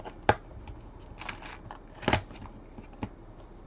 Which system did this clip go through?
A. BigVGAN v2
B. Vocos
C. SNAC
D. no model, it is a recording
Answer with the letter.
D